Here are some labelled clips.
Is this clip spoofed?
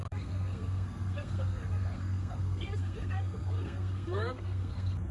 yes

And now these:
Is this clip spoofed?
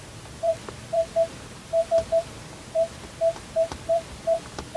yes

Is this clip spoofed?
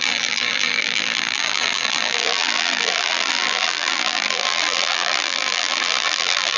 yes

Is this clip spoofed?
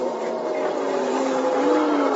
no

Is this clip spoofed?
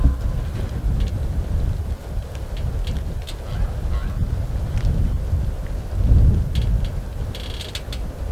no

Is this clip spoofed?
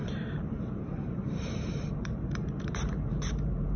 yes